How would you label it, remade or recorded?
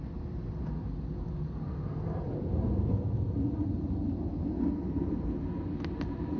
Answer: recorded